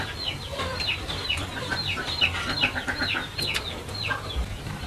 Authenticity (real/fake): fake